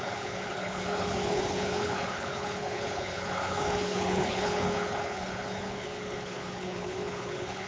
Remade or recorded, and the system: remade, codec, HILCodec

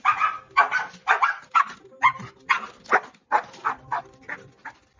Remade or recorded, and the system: recorded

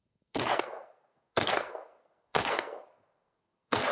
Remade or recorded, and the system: remade, codec, SNAC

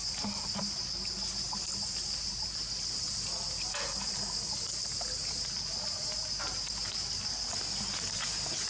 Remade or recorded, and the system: recorded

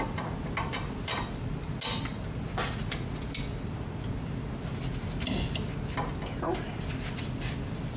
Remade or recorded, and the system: recorded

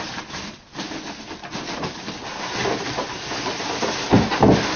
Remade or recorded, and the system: recorded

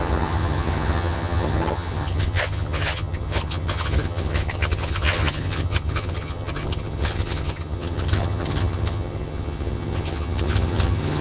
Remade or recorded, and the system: remade, vocoder, HiFi-GAN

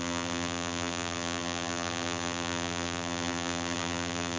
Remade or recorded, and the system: remade, vocoder, BigVGAN v2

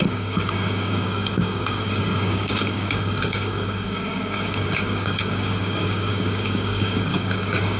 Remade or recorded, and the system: remade, codec, DAC